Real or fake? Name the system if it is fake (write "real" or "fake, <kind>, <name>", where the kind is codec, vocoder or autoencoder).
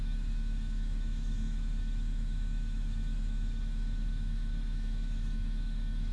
fake, autoencoder, DAC-VAE